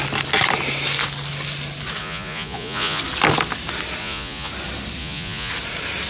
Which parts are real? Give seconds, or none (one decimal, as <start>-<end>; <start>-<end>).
0.0-2.0; 3.0-4.0; 4.5-5.0; 5.5-6.1